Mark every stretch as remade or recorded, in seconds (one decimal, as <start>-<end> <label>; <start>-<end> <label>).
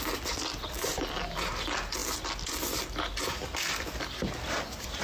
0.0-0.9 recorded; 0.9-1.5 remade; 1.5-5.0 recorded